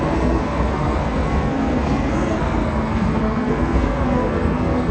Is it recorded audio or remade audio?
remade